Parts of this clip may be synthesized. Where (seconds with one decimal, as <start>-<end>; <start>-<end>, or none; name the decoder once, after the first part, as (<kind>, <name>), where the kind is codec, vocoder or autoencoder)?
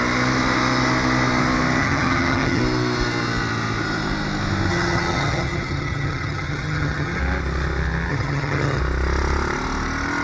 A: 1.8-2.6 (vocoder, HiFi-GAN); 4.7-7.2; 8.1-8.8